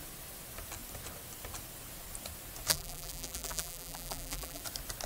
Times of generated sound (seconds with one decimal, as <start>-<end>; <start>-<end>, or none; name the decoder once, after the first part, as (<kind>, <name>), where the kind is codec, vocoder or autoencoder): 2.7-4.6 (vocoder, BigVGAN v2)